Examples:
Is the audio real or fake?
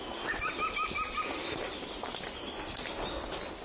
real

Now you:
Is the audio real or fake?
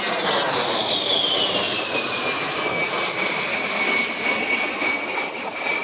real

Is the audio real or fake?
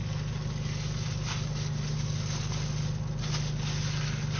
real